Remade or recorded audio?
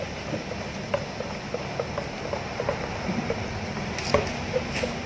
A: recorded